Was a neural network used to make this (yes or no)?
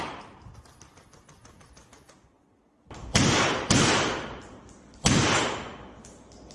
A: no